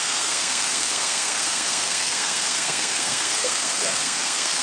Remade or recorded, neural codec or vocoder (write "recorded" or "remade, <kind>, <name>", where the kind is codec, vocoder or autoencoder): remade, codec, SNAC